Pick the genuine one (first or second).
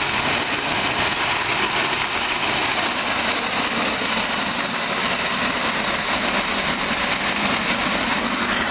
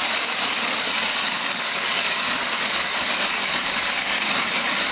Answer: first